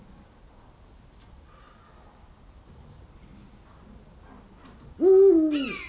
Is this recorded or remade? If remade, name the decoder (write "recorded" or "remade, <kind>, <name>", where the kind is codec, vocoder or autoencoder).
recorded